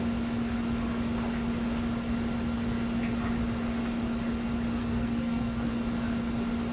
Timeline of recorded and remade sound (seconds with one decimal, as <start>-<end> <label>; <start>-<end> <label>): 0.0-4.8 recorded; 4.8-5.7 remade; 5.7-6.7 recorded